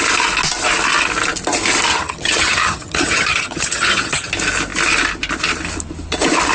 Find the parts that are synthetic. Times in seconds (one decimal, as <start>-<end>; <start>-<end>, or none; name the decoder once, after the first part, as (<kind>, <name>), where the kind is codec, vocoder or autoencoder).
1.9-4.3 (vocoder, HiFi-GAN)